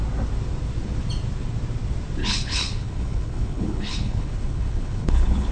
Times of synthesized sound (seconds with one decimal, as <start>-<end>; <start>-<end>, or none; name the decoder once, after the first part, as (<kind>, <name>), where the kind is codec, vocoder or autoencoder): 2.2-5.5 (codec, HILCodec)